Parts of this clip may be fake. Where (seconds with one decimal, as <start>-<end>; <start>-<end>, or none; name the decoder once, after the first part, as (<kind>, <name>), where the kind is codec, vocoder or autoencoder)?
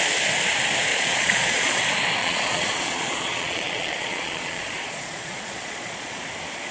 0.9-1.8 (vocoder, Vocos); 2.2-6.2